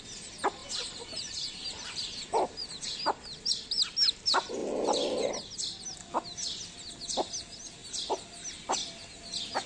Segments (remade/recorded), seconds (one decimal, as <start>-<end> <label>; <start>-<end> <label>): 0.0-0.6 recorded; 0.6-3.8 remade; 3.8-4.6 recorded; 4.6-5.3 remade; 5.3-9.7 recorded